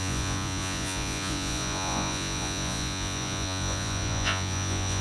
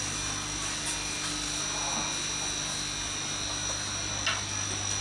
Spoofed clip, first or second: first